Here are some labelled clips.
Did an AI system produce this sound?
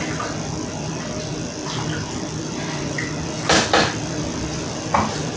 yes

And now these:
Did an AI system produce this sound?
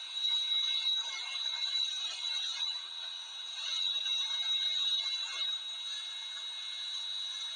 no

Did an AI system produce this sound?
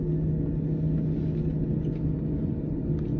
no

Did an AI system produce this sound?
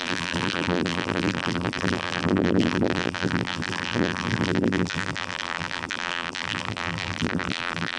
yes